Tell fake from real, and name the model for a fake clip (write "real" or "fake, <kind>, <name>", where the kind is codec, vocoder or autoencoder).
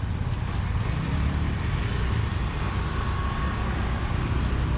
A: real